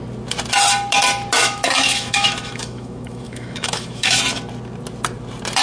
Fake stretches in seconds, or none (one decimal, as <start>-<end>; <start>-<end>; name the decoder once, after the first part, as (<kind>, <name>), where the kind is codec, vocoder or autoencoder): 1.4-4.2 (autoencoder, DAC-VAE)